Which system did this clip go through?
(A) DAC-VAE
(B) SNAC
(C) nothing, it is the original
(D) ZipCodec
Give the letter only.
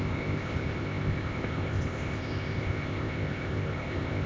D